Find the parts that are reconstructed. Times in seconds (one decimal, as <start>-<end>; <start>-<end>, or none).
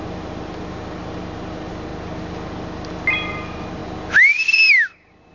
none